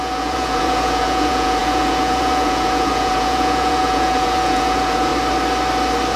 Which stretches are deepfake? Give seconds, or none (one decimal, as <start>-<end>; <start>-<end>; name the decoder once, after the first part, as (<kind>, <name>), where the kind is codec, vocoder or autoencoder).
0.0-5.1 (vocoder, Vocos)